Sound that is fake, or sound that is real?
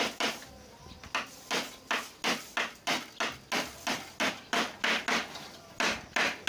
real